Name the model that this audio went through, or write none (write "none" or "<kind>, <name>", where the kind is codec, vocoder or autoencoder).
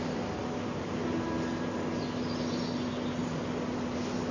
none